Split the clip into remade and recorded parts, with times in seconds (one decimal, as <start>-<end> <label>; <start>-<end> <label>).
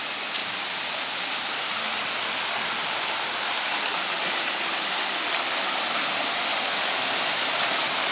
0.0-0.4 recorded; 0.4-1.0 remade; 1.0-3.9 recorded; 3.9-4.9 remade; 4.9-8.1 recorded